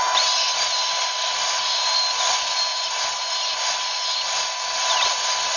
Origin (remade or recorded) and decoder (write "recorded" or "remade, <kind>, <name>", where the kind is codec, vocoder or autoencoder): recorded